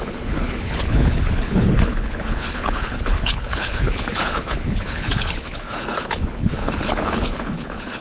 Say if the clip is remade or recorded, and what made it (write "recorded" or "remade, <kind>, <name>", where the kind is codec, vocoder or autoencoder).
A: remade, codec, HILCodec